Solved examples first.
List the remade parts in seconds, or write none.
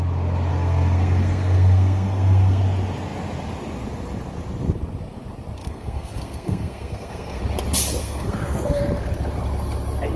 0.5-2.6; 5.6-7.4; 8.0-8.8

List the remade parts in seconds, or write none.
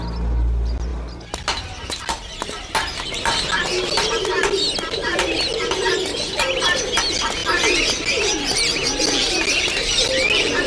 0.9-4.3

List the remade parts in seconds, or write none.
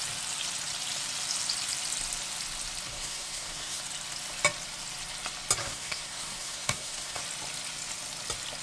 2.9-3.8; 5.6-7.2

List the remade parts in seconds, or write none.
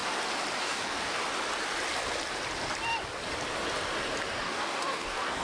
0.6-1.2; 4.4-5.4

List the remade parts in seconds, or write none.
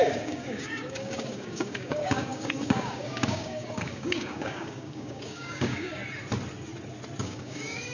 0.0-6.0; 7.2-7.9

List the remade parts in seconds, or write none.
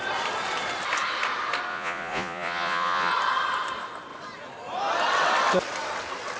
1.7-3.1